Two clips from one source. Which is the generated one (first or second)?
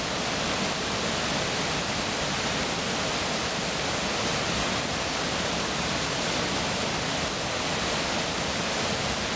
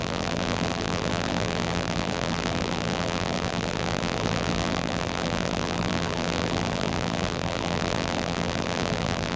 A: second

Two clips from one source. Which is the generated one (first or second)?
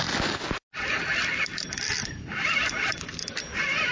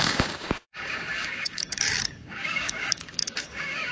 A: second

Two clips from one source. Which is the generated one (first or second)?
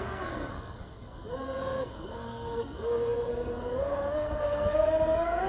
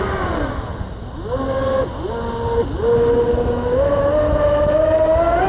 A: first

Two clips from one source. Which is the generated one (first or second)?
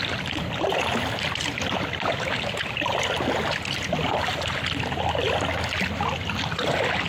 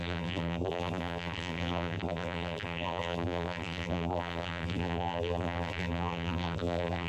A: second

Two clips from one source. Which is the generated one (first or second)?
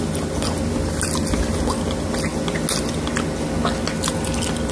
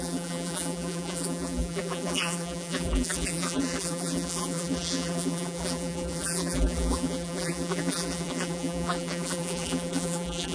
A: second